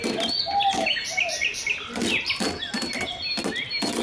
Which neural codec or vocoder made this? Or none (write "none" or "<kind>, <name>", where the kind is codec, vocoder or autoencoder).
none